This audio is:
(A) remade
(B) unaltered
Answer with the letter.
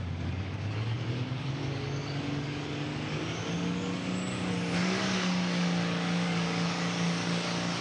A